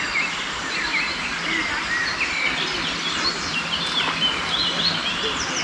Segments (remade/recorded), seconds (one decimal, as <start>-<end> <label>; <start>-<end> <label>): 0.0-5.6 recorded